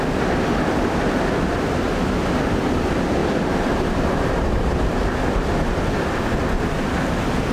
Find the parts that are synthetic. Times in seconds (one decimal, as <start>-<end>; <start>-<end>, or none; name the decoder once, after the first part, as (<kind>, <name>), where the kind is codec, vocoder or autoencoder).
3.2-4.8 (vocoder, BigVGAN v2)